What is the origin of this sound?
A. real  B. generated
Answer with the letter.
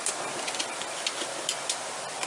A